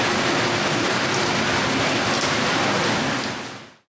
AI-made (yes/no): no